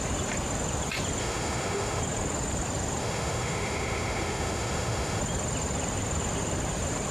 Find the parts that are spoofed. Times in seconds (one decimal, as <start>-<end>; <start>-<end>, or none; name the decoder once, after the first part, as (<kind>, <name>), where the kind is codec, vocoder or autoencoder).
1.2-2.0 (autoencoder, DAC-VAE); 3.0-5.2